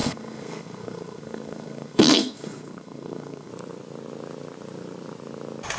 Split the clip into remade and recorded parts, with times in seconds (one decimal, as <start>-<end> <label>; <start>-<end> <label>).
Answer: 0.0-3.5 remade; 3.5-5.8 recorded